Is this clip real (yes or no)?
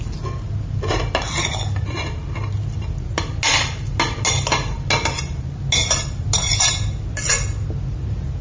yes